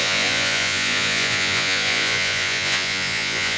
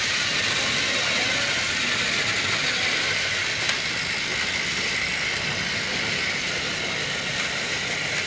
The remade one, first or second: first